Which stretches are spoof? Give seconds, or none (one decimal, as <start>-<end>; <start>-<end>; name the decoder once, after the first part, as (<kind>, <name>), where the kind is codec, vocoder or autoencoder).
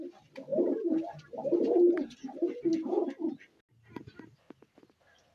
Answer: 0.5-2.5 (vocoder, BigVGAN v2)